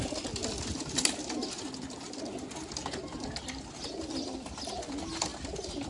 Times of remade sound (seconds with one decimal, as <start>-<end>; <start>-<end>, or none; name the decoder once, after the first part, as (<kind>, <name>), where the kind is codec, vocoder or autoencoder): none